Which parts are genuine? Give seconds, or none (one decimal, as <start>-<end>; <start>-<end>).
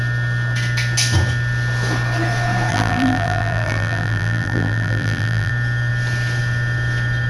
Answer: 0.0-2.7; 5.5-7.3